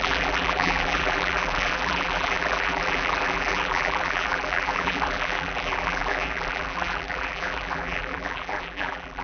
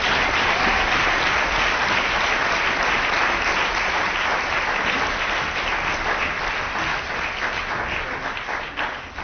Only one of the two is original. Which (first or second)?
second